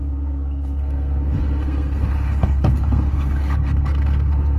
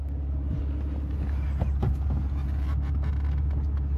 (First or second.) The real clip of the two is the second